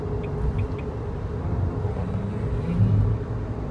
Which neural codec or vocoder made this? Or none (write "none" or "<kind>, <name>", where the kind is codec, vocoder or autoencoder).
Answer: none